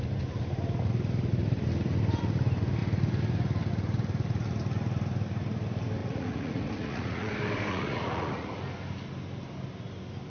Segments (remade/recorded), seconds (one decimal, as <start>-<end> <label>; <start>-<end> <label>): 0.0-6.0 recorded; 6.0-7.3 remade; 7.3-7.7 recorded; 7.7-8.5 remade; 8.5-10.3 recorded